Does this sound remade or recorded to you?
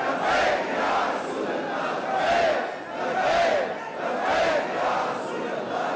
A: recorded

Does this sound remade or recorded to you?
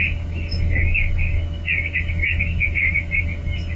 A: remade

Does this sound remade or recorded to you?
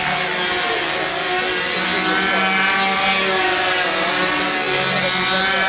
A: recorded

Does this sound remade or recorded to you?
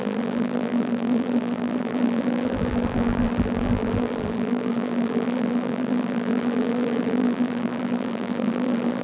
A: remade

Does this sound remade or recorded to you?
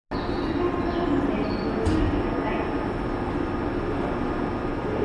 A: recorded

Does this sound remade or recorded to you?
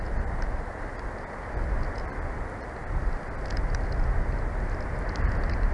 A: recorded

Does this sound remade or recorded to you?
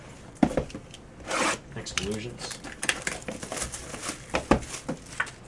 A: recorded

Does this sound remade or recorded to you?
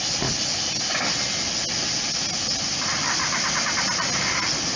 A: recorded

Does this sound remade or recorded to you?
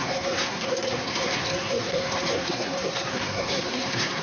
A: remade